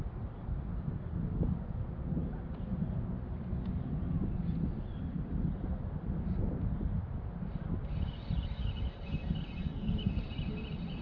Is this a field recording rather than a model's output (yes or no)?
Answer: yes